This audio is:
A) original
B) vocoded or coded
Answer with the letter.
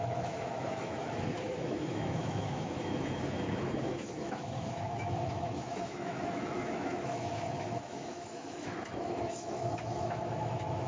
B